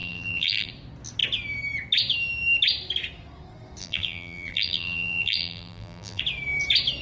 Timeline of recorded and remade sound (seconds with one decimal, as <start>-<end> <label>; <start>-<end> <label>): 0.0-0.7 remade; 0.7-3.8 recorded; 3.8-6.2 remade; 6.2-7.0 recorded